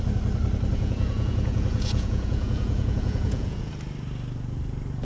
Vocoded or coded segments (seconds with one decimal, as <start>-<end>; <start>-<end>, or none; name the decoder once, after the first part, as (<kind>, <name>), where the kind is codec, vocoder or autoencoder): 0.7-3.7 (vocoder, Vocos)